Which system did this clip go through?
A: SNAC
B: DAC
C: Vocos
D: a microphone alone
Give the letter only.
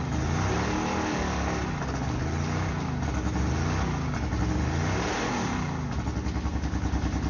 D